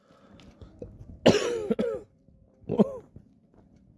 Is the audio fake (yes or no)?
no